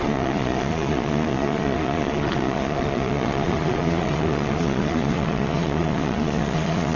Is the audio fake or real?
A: fake